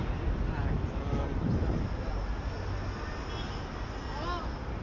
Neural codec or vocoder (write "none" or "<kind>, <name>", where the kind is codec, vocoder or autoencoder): none